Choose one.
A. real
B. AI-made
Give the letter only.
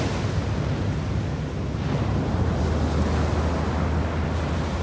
A